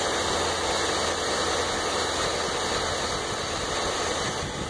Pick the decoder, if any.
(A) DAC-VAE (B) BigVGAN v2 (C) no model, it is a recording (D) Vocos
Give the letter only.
C